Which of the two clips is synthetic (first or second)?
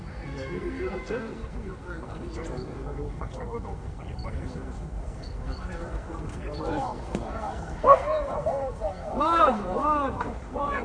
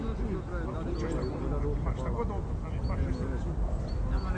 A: first